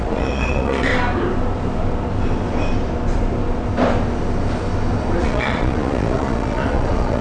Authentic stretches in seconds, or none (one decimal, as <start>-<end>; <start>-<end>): 0.9-5.2